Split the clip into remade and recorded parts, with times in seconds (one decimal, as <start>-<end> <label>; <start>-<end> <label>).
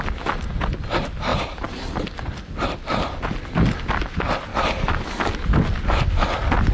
0.0-4.5 recorded; 4.5-5.1 remade; 5.1-6.7 recorded